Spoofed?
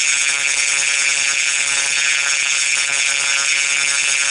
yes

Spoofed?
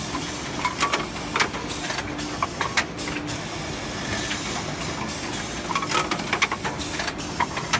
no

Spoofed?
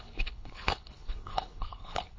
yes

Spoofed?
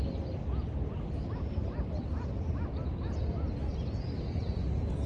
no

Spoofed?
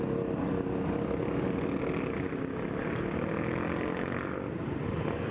no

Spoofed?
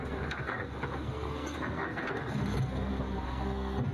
yes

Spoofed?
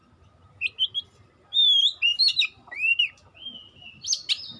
yes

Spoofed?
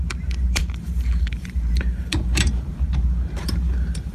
yes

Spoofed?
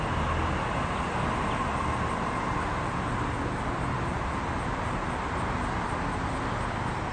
no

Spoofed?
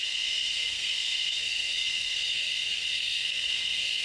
yes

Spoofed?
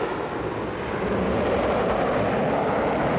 no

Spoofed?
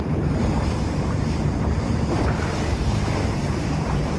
yes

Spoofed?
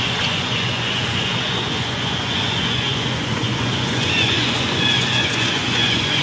yes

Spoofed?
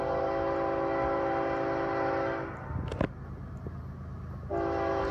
no